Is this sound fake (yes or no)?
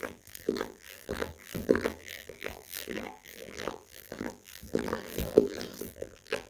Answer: yes